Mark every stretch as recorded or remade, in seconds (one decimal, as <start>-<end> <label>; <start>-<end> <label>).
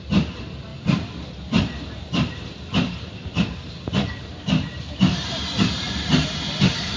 0.0-0.7 recorded; 0.7-4.9 remade; 4.9-7.0 recorded